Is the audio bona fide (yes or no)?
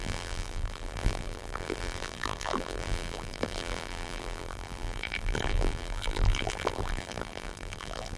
no